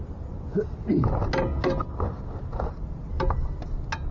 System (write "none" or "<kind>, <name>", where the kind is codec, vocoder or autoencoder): none